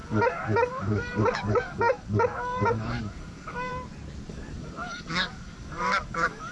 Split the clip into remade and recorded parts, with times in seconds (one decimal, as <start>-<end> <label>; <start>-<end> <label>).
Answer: 0.0-3.7 remade; 3.7-4.3 recorded; 4.3-6.5 remade